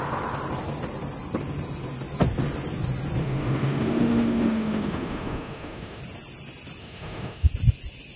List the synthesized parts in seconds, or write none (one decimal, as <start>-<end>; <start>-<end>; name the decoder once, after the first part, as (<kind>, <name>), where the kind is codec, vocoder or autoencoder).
3.2-6.0 (autoencoder, DAC-VAE); 6.8-7.5